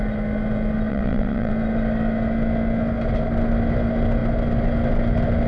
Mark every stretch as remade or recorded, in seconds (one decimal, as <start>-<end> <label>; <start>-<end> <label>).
0.0-0.9 recorded; 0.9-1.5 remade; 1.5-5.5 recorded

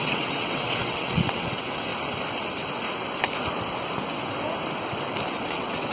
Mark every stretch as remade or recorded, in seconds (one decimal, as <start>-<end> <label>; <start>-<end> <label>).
0.0-1.9 remade; 1.9-5.4 recorded; 5.4-5.9 remade

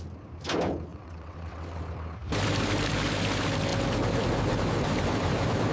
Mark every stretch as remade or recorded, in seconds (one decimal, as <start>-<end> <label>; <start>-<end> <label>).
0.0-0.9 recorded; 0.9-1.8 remade; 1.8-5.7 recorded

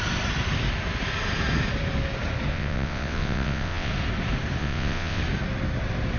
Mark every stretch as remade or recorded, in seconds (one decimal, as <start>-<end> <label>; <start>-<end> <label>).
0.0-2.5 recorded; 2.5-3.9 remade; 3.9-4.6 recorded; 4.6-5.2 remade; 5.2-6.2 recorded

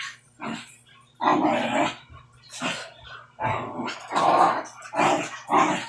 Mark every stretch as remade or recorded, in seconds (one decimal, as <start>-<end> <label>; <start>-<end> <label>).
0.0-5.9 recorded

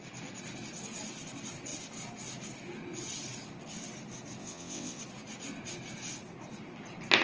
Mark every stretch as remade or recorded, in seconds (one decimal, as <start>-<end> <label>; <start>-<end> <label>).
0.0-4.4 recorded; 4.4-5.0 remade; 5.0-7.2 recorded